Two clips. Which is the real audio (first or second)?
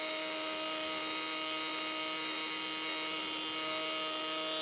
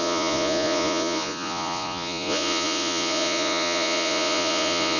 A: first